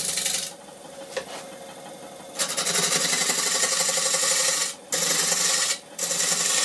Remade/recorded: recorded